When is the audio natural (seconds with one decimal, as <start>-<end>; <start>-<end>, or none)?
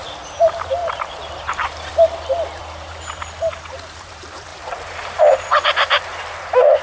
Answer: 1.9-2.6